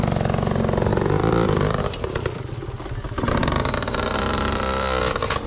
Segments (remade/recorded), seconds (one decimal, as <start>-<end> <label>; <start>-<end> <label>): 0.0-0.9 recorded; 0.9-2.5 remade; 2.5-3.4 recorded; 3.4-5.5 remade